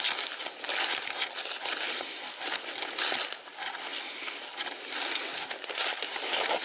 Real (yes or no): yes